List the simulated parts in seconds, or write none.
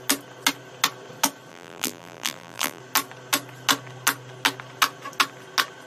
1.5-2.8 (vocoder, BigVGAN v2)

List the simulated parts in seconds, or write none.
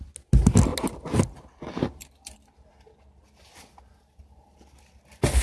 none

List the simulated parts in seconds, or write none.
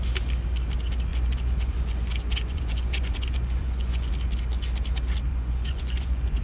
1.1-4.1 (vocoder, Vocos); 5.3-6.4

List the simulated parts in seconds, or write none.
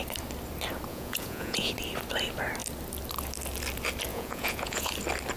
0.9-1.7 (vocoder, Vocos); 4.1-4.9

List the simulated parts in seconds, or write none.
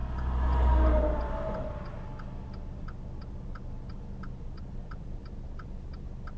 0.0-2.6 (vocoder, BigVGAN v2); 3.2-6.4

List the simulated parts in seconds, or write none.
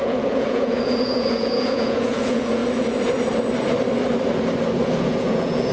0.0-2.6 (vocoder, Vocos); 4.8-5.7